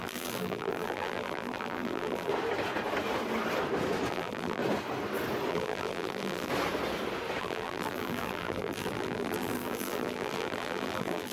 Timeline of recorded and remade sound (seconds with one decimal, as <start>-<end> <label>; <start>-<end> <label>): 0.0-2.3 remade; 2.3-4.1 recorded; 4.1-4.6 remade; 4.6-5.5 recorded; 5.5-6.5 remade; 6.5-7.4 recorded; 7.4-11.3 remade